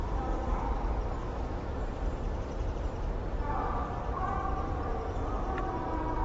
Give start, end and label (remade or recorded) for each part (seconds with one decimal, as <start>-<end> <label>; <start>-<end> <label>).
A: 0.0-1.2 recorded; 1.2-1.7 remade; 1.7-6.2 recorded